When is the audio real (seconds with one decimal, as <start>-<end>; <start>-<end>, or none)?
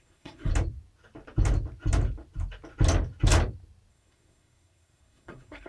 0.5-3.9